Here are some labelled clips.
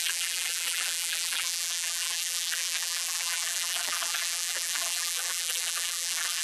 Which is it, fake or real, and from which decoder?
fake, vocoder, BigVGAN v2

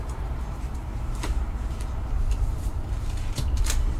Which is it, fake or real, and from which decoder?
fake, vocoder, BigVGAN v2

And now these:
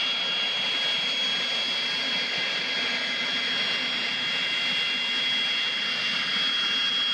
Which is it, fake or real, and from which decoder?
real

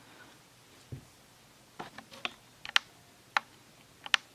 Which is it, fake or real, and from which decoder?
real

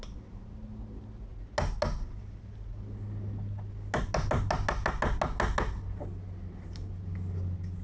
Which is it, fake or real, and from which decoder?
real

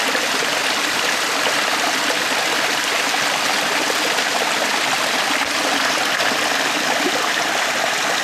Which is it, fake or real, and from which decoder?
real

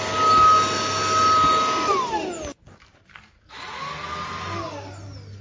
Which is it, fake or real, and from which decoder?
real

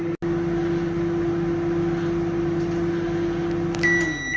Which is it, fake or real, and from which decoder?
real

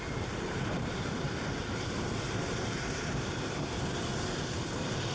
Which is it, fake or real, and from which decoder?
fake, vocoder, BigVGAN v2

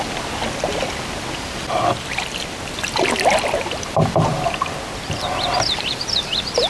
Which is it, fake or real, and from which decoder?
real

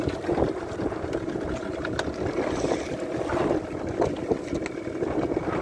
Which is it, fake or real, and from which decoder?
real